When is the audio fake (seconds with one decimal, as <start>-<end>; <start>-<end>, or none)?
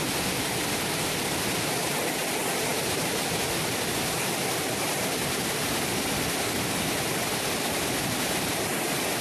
none